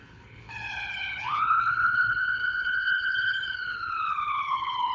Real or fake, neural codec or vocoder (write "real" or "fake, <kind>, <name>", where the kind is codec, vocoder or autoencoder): fake, codec, HILCodec